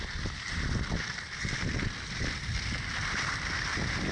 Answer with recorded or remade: recorded